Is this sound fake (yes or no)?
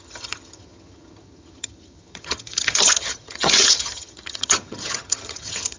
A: yes